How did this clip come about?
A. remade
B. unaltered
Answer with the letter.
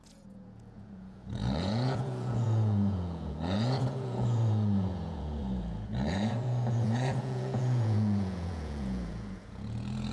A